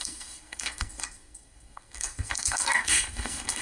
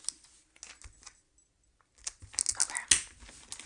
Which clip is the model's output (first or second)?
first